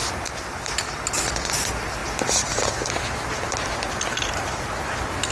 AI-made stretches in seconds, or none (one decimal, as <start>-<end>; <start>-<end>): none